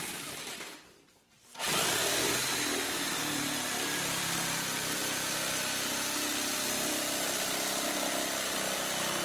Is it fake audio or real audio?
fake